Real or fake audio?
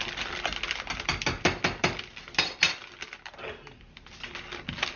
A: real